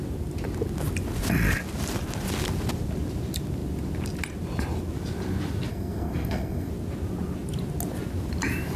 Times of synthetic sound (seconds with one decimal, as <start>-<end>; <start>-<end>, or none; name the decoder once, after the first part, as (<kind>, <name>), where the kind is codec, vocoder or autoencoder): 5.7-6.7 (codec, SNAC)